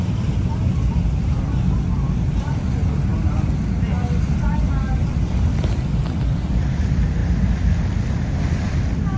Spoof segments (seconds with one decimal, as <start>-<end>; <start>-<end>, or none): none